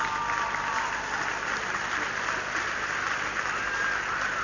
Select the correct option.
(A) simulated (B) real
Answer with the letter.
B